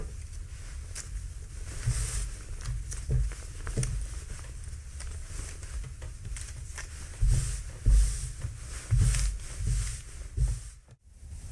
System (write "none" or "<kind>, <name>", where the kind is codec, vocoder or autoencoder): none